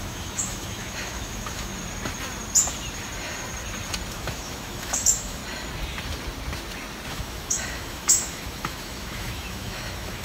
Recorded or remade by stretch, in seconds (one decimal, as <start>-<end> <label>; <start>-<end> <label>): 0.0-1.7 remade; 1.7-4.1 recorded; 4.1-5.4 remade; 5.4-7.1 recorded; 7.1-10.2 remade